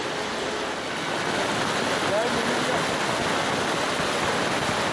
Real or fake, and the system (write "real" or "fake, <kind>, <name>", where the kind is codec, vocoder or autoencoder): real